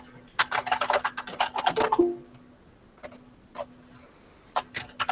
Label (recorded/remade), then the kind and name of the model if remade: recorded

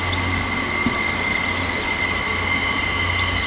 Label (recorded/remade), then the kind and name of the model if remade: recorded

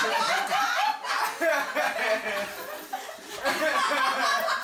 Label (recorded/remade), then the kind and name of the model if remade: recorded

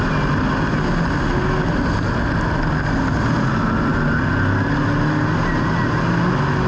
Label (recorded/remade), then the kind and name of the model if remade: recorded